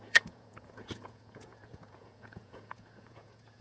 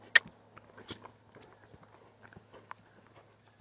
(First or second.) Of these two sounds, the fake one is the first